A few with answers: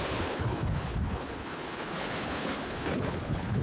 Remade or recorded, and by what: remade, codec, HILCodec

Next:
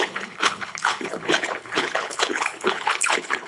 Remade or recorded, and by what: remade, codec, HILCodec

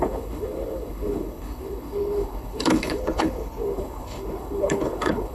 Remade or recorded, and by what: remade, codec, HILCodec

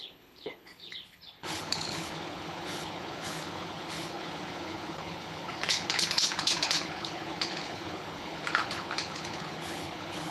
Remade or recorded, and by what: remade, codec, HILCodec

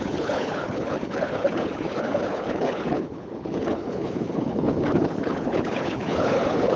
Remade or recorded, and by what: remade, codec, HILCodec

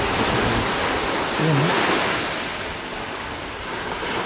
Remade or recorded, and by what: recorded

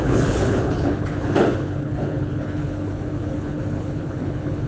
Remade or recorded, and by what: remade, codec, HILCodec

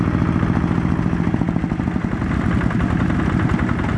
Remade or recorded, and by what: recorded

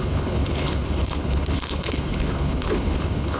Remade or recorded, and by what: remade, codec, HILCodec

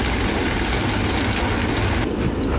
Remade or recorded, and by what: recorded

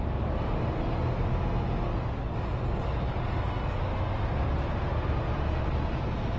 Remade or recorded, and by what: recorded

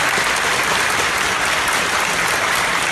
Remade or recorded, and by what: recorded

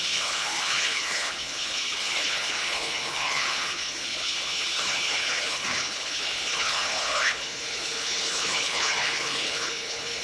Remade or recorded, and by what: remade, codec, HILCodec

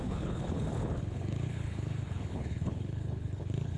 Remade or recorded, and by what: remade, codec, HILCodec